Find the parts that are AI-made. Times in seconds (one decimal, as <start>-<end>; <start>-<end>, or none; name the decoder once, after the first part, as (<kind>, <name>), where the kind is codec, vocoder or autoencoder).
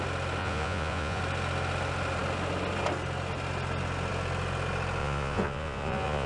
0.4-1.2 (vocoder, Vocos); 5.0-6.3